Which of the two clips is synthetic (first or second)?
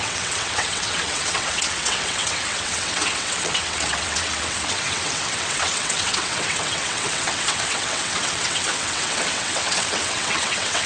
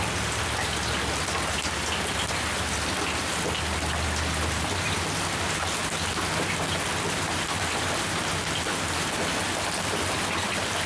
first